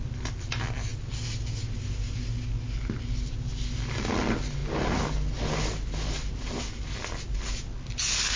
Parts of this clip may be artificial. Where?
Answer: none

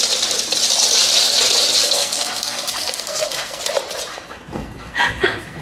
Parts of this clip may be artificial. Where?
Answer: 1.8-3.6; 4.1-5.6